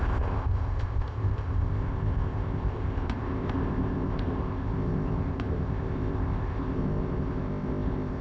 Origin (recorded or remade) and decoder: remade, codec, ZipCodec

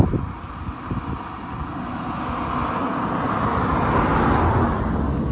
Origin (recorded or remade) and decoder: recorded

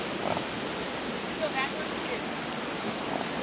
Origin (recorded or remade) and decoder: recorded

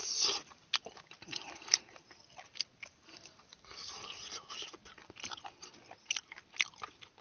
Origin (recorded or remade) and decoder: recorded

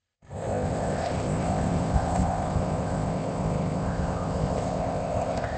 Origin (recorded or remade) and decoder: remade, codec, ZipCodec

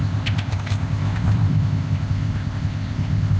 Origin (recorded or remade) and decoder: remade, codec, ZipCodec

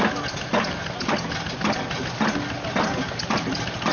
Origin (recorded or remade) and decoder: recorded